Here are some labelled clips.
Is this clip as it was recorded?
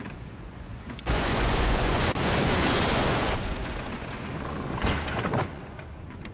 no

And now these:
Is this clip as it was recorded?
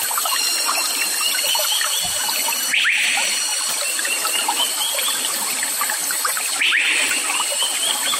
yes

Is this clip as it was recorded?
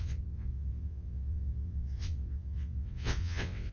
no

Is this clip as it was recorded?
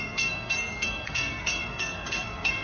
no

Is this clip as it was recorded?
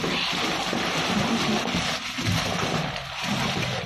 yes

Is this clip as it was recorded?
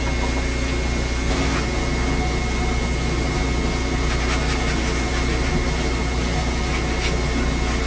yes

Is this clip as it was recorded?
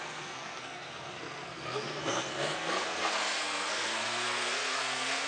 no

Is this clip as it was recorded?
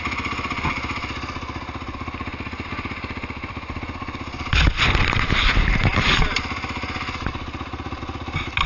yes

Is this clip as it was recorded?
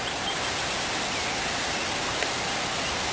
yes